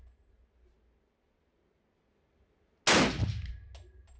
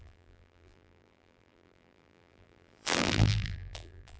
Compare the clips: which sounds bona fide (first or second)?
first